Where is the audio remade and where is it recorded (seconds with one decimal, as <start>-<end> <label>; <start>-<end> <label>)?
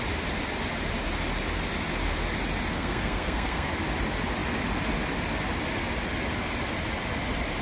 0.0-2.7 recorded; 2.7-3.7 remade; 3.7-7.6 recorded